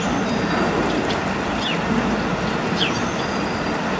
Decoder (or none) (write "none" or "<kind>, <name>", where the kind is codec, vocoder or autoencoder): none